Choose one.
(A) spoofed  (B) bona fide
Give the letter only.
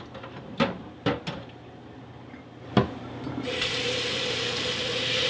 B